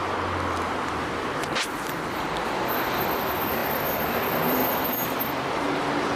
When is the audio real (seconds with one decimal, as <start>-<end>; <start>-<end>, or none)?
0.0-1.7